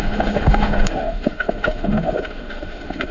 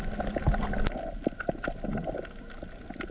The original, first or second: second